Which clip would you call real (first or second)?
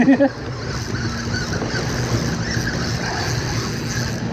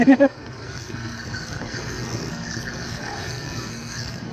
first